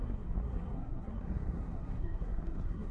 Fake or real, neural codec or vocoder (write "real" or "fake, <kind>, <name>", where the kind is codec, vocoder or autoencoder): fake, codec, SNAC